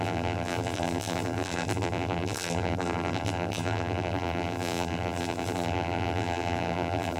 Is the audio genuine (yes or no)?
no